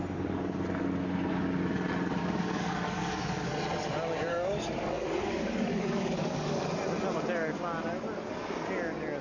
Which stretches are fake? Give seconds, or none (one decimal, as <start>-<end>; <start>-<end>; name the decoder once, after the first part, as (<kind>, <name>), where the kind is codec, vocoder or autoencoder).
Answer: 2.2-3.5 (codec, DAC); 4.3-6.6